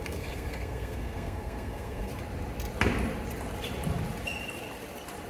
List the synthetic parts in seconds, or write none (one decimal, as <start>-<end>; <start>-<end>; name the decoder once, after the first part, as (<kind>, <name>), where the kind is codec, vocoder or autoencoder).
0.0-2.1 (codec, SNAC)